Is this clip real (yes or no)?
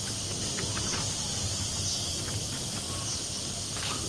yes